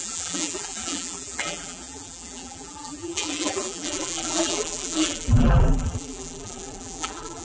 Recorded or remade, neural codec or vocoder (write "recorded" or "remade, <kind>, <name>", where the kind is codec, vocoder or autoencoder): remade, vocoder, BigVGAN v2